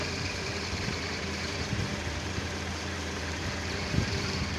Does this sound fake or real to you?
fake